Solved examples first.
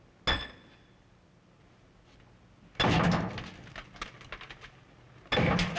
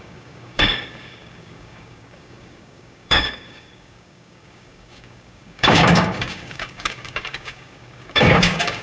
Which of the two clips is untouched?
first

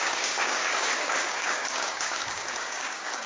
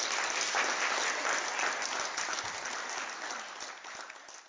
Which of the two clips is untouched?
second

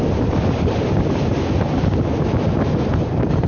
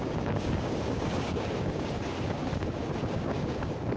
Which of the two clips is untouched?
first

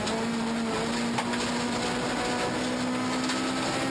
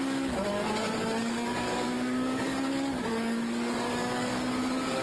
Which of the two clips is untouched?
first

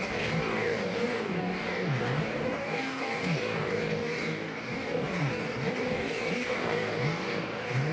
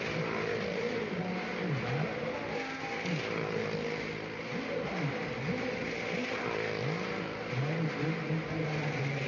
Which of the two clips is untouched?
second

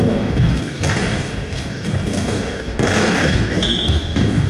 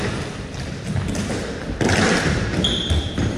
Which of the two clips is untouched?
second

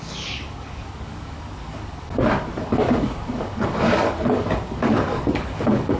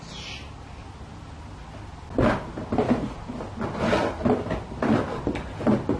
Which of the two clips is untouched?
second